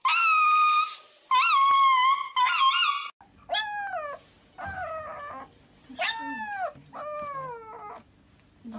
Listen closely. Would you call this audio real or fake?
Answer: real